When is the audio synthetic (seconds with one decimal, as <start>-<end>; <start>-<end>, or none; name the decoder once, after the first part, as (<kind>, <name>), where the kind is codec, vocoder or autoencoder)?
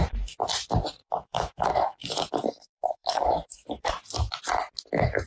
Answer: 1.0-3.9 (codec, DAC)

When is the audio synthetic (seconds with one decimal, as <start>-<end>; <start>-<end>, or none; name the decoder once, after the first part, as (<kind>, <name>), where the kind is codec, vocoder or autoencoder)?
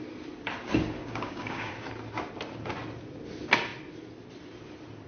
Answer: 1.0-1.7 (codec, DAC)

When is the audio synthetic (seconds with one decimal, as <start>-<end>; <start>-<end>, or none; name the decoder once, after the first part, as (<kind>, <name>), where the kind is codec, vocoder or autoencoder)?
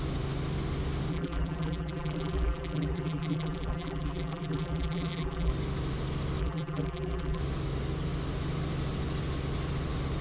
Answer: 1.1-5.5 (vocoder, BigVGAN v2); 6.4-7.4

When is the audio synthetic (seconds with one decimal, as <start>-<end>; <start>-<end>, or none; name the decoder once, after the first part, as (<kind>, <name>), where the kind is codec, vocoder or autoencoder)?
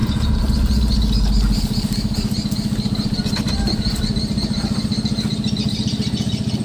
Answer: none